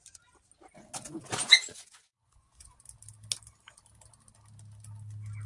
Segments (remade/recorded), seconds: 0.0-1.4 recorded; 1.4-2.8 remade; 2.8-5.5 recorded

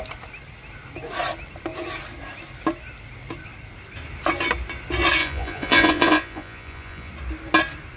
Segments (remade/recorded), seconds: 0.0-5.2 recorded; 5.2-7.1 remade; 7.1-8.0 recorded

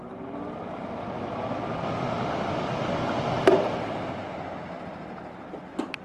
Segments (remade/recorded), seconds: 0.0-6.0 recorded